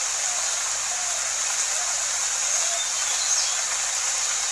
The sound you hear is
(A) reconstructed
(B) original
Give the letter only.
B